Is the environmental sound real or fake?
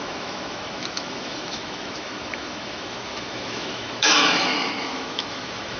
fake